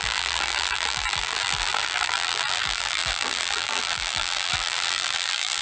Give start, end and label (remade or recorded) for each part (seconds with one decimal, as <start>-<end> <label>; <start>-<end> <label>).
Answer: 0.0-5.6 remade